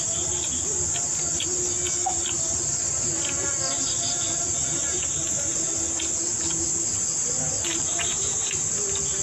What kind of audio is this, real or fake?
real